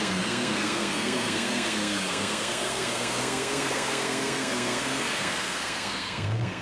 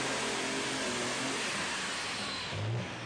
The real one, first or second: second